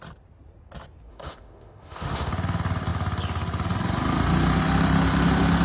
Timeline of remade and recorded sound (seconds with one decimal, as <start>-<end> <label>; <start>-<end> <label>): 0.0-1.1 recorded; 1.1-2.3 remade; 2.3-5.6 recorded